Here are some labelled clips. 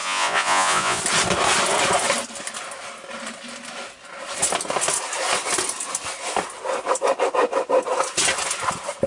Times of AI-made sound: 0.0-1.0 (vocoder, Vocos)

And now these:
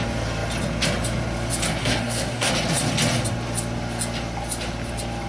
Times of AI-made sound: 1.8-2.5 (codec, SNAC)

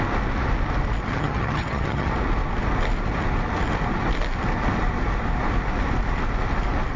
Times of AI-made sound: 1.1-2.1 (vocoder, HiFi-GAN)

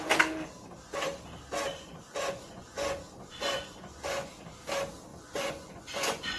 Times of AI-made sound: 1.7-4.3 (vocoder, Vocos); 5.1-6.4

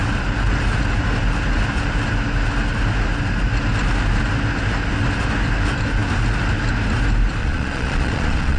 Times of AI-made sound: 7.4-8.6 (vocoder, Vocos)